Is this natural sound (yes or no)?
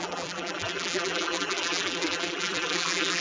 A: no